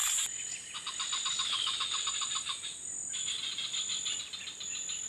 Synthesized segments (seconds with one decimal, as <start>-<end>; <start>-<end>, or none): none